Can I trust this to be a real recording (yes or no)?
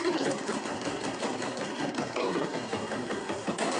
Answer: no